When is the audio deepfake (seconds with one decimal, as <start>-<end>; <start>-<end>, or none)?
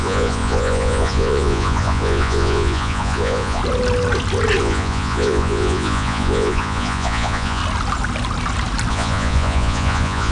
0.0-3.6; 4.6-7.6; 8.9-10.3